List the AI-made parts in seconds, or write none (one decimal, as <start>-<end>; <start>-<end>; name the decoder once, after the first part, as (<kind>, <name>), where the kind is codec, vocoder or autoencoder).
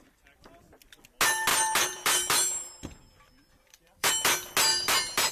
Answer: 1.5-4.1 (vocoder, BigVGAN v2); 4.7-5.3